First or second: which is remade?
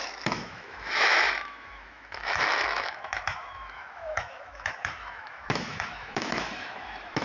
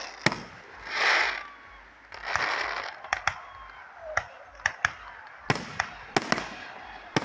first